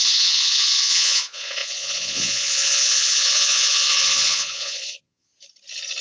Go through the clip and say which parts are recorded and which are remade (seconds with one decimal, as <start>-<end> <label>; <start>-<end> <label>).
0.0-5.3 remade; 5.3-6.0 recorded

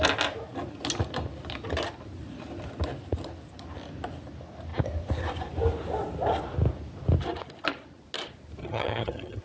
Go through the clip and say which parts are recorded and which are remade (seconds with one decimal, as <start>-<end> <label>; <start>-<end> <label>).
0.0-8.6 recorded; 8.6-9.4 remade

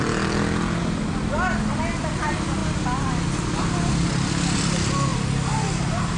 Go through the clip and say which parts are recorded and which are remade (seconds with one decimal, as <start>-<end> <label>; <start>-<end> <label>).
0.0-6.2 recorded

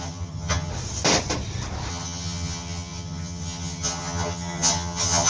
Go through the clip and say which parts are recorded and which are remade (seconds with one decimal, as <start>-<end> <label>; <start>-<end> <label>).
0.0-0.7 remade; 0.7-1.9 recorded; 1.9-5.3 remade